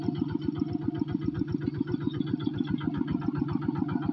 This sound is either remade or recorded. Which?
recorded